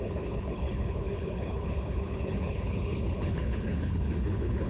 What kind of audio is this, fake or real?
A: fake